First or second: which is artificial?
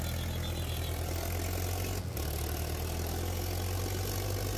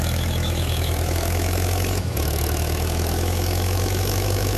second